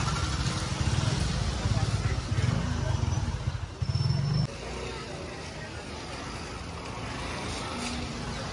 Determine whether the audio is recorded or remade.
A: recorded